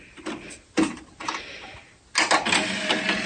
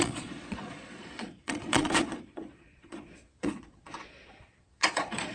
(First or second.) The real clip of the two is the first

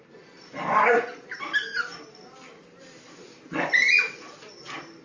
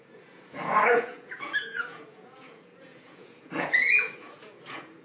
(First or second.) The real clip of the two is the first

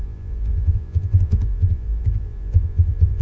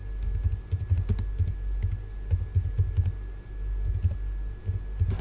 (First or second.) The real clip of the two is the second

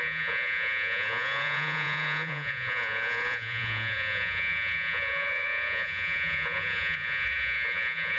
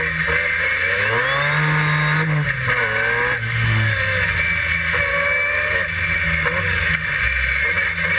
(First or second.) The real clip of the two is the second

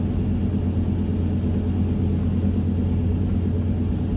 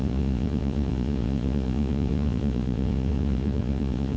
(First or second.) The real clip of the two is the first